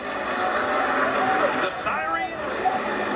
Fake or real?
real